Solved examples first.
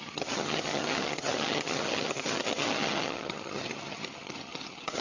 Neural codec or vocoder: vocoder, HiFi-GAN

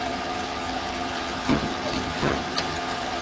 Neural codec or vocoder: vocoder, HiFi-GAN